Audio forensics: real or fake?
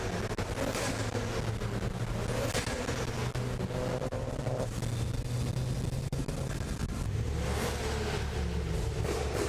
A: real